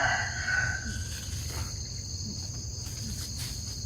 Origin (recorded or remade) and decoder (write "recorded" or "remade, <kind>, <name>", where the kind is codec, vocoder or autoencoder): recorded